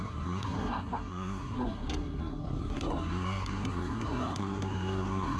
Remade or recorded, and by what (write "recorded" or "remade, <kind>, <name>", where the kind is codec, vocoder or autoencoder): remade, codec, SNAC